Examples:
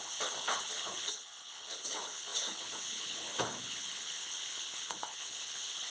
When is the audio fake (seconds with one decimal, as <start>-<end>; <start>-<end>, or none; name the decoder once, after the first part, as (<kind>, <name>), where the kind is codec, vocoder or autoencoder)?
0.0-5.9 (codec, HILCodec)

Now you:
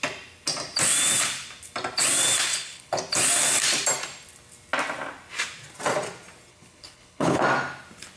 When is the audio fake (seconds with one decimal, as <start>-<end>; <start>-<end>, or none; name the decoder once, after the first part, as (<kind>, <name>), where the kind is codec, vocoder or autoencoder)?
2.5-3.0 (codec, HILCodec); 6.5-7.4

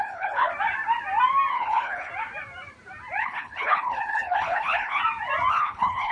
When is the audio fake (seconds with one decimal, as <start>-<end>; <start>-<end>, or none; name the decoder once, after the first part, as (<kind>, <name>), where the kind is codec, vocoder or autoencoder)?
0.0-0.5 (codec, HILCodec); 1.5-2.1; 3.2-5.0; 5.5-6.1

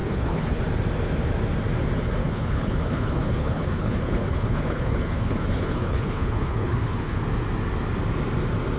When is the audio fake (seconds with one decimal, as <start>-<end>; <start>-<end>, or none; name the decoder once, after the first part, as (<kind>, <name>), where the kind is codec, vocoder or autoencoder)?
0.0-0.6 (codec, HILCodec); 2.2-7.2

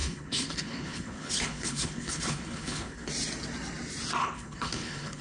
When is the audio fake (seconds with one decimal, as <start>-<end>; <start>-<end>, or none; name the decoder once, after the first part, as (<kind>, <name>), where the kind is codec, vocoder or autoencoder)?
0.0-3.1 (codec, HILCodec); 4.2-5.2

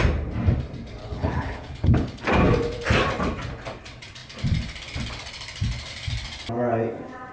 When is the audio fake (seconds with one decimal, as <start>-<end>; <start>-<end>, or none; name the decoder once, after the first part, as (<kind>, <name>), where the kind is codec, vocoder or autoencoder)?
1.0-2.2 (codec, HILCodec)

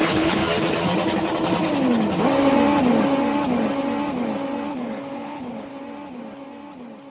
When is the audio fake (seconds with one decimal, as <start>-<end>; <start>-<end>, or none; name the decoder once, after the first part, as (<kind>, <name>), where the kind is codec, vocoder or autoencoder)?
0.0-0.4 (codec, HILCodec); 4.7-5.7

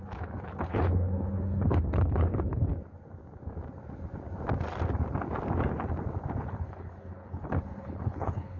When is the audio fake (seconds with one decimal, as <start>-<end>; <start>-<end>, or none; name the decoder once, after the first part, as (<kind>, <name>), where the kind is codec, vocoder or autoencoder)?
0.0-2.7 (codec, HILCodec); 6.4-8.6